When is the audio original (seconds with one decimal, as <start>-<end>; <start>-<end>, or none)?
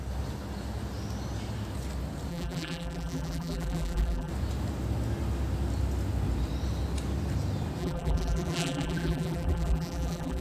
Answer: 0.0-2.3; 4.3-7.8